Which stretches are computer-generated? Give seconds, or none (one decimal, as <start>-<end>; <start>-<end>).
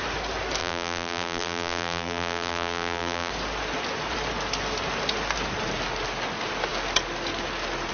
0.6-3.3